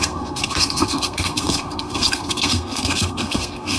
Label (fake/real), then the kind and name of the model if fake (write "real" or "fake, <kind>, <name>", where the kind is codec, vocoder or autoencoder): fake, codec, SNAC